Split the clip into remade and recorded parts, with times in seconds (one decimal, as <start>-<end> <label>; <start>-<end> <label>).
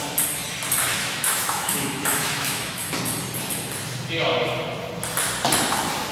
0.0-1.0 recorded; 1.0-3.0 remade; 3.0-6.1 recorded